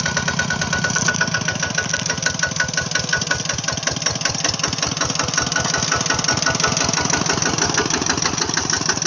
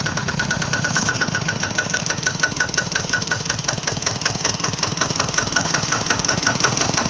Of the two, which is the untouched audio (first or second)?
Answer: first